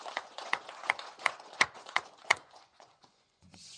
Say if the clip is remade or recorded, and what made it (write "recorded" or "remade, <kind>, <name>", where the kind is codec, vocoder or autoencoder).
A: remade, vocoder, Vocos